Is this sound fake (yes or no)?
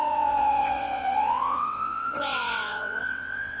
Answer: yes